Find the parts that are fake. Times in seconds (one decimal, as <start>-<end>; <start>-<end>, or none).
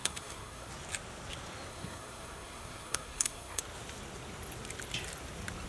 0.0-0.7; 1.7-3.6